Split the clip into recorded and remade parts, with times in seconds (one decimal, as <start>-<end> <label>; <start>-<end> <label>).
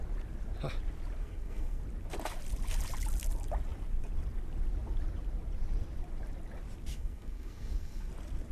0.0-1.2 recorded; 1.2-1.8 remade; 1.8-6.9 recorded; 6.9-8.1 remade; 8.1-8.5 recorded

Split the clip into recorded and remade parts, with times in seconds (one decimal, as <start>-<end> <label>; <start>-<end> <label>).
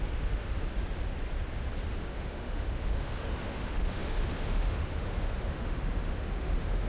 0.0-0.7 remade; 0.7-2.0 recorded; 2.0-6.9 remade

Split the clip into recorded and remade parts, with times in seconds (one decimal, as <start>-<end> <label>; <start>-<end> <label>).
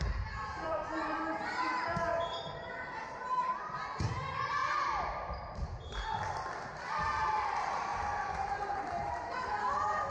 0.0-7.9 remade; 7.9-9.1 recorded; 9.1-10.1 remade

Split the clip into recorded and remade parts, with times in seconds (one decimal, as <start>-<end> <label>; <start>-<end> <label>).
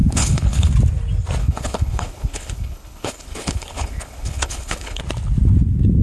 0.0-0.7 remade; 0.7-1.4 recorded; 1.4-5.0 remade; 5.0-6.0 recorded